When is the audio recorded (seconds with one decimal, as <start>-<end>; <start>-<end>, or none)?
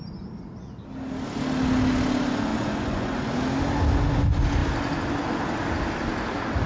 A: 0.0-2.5; 3.3-6.7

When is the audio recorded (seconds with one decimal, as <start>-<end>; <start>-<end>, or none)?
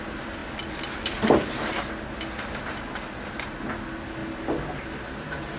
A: 0.0-5.6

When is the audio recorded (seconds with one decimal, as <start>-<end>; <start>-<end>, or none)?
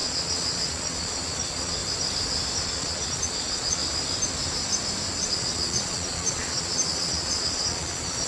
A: 1.8-2.6; 3.8-5.2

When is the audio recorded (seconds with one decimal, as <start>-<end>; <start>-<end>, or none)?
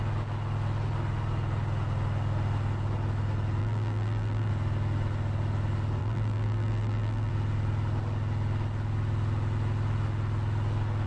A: 0.0-3.6; 4.5-6.0; 7.3-11.1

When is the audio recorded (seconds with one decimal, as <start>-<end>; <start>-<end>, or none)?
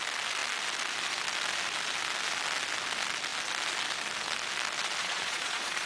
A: 0.0-5.0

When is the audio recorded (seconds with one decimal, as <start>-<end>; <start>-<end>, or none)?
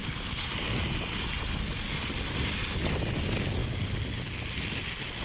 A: 0.0-5.2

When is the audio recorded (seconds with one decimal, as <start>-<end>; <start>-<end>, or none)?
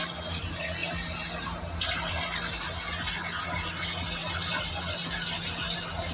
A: 0.0-6.1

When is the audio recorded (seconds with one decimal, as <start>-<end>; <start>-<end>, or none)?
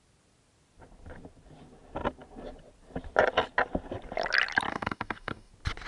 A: 0.0-4.7; 5.5-5.9